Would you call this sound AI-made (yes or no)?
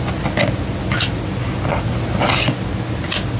no